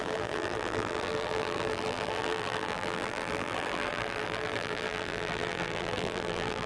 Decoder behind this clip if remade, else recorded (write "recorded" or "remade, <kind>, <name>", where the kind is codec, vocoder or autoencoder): remade, vocoder, BigVGAN v2